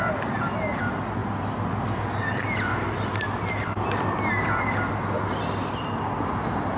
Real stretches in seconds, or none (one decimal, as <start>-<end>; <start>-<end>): 0.0-6.8